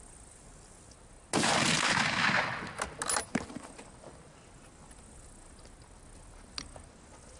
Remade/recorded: recorded